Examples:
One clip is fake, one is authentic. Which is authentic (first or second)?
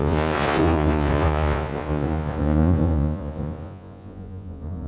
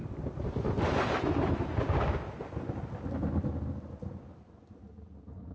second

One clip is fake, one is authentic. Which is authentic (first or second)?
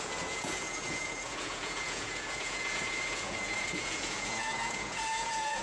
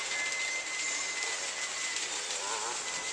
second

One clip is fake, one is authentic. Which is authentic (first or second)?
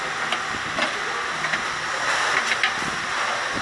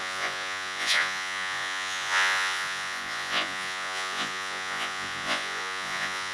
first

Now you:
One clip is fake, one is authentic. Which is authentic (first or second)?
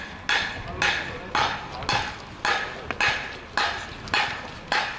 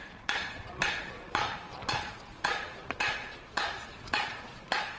first